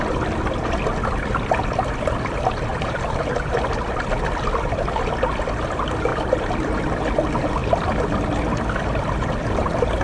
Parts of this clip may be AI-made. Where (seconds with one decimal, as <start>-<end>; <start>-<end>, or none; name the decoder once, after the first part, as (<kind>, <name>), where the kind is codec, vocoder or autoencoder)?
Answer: 2.7-3.6 (vocoder, BigVGAN v2); 6.1-6.9